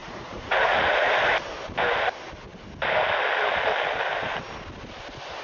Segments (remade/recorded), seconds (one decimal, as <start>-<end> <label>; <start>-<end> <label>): 0.0-1.2 remade; 1.2-5.4 recorded